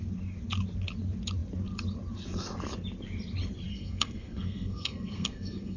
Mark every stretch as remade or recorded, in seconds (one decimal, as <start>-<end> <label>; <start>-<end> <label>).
0.0-3.7 recorded; 3.7-5.8 remade